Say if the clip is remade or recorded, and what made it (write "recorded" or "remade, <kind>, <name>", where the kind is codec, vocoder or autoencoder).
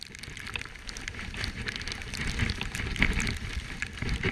recorded